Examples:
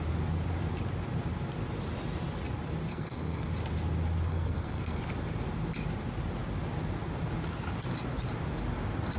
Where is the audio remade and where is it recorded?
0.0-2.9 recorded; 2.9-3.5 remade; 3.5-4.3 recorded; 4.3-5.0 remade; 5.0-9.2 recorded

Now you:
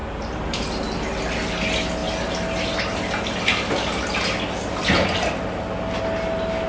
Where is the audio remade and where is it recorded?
0.0-1.2 remade; 1.2-6.7 recorded

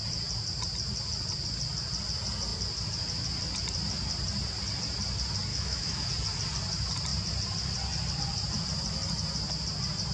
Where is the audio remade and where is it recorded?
0.0-5.5 recorded; 5.5-6.1 remade; 6.1-10.1 recorded

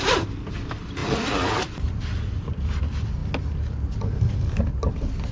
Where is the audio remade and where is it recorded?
0.0-1.0 recorded; 1.0-2.8 remade; 2.8-5.3 recorded

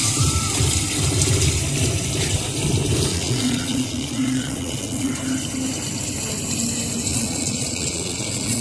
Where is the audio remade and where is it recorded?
0.0-3.1 recorded; 3.1-5.1 remade; 5.1-7.1 recorded; 7.1-8.6 remade